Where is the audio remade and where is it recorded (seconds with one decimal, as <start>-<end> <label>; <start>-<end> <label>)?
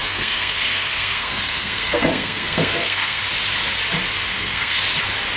0.0-3.2 remade; 3.2-4.3 recorded; 4.3-4.8 remade; 4.8-5.4 recorded